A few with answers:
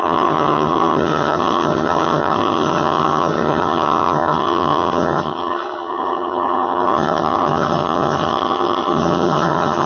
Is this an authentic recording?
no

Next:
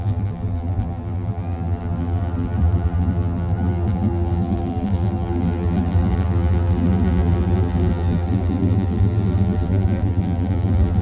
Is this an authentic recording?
no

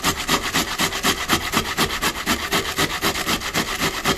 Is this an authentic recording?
yes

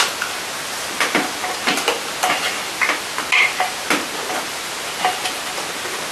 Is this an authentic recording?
yes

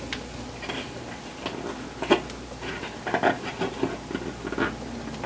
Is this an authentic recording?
yes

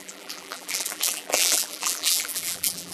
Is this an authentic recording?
no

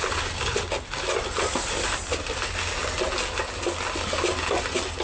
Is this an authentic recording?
yes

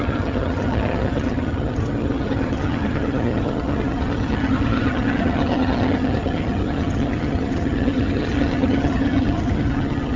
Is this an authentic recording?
no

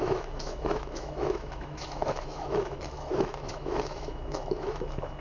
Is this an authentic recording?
no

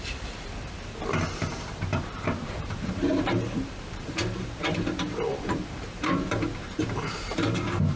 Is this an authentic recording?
no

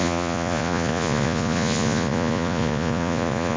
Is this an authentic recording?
no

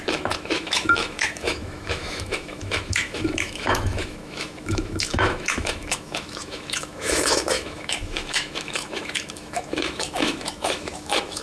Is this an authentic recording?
no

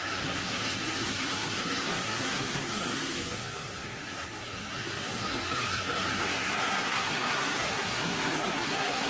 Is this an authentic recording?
no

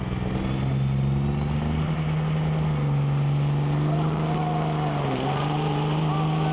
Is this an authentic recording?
yes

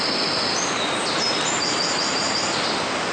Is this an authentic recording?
yes